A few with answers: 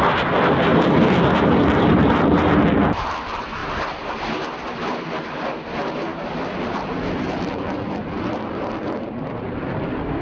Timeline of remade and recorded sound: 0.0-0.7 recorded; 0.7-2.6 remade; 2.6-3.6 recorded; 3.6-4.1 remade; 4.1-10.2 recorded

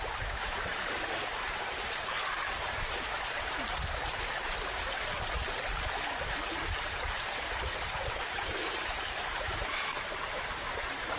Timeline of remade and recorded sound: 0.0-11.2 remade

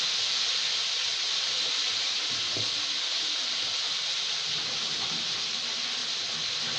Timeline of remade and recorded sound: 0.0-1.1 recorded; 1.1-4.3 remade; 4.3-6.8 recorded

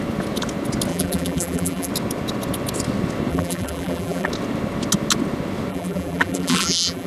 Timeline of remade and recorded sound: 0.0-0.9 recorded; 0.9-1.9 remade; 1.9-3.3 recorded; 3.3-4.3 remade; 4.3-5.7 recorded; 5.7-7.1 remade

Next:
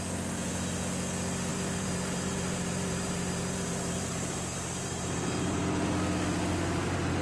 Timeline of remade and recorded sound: 0.0-1.5 recorded; 1.5-5.6 remade; 5.6-7.2 recorded